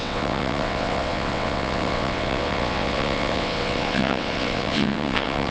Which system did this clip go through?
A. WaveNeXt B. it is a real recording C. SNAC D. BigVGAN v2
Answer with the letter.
A